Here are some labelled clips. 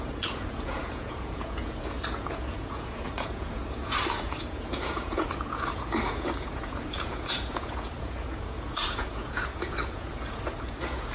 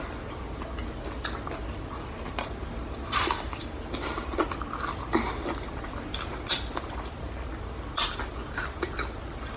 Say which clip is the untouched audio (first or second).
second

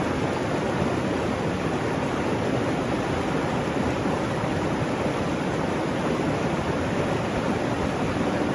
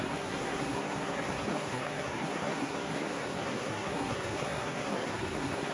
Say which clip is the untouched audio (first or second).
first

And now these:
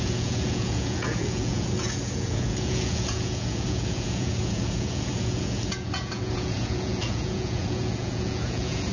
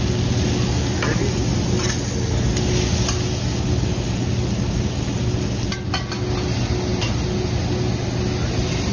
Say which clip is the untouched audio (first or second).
second